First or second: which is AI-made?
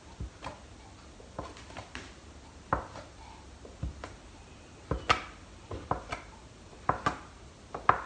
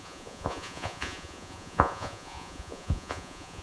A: second